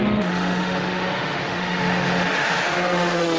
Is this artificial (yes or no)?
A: yes